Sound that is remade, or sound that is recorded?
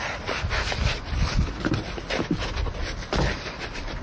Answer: recorded